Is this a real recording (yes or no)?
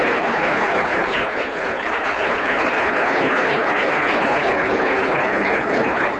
no